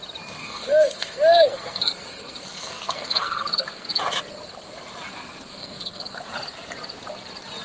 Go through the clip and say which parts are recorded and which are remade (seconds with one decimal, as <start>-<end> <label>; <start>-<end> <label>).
0.0-0.4 recorded; 0.4-4.0 remade; 4.0-5.5 recorded; 5.5-6.2 remade; 6.2-7.6 recorded